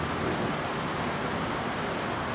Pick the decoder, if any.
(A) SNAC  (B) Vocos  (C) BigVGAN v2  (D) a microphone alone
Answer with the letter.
D